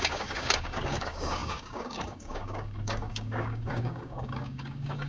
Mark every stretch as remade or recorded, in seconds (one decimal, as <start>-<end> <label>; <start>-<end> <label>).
0.0-5.1 remade